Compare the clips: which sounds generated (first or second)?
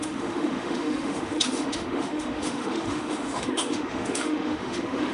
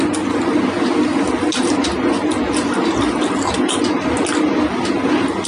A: first